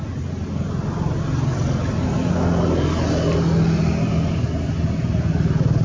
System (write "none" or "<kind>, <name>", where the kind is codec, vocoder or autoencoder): none